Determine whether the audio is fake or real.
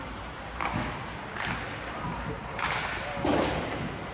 real